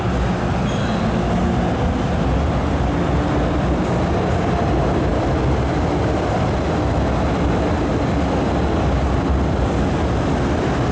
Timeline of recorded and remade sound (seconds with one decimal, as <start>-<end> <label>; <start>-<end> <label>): 0.0-10.9 recorded